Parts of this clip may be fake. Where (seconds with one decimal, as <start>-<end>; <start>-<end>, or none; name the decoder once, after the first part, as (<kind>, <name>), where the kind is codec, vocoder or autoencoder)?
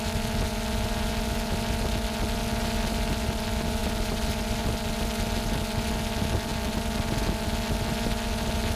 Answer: none